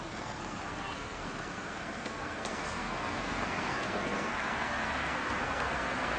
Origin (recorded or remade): remade